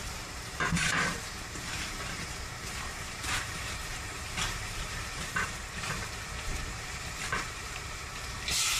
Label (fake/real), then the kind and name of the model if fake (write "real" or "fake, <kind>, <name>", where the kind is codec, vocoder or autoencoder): fake, vocoder, BigVGAN v2